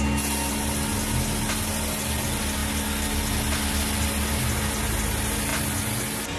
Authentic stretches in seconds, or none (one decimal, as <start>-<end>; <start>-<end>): 0.0-6.4